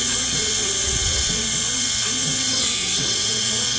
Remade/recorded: remade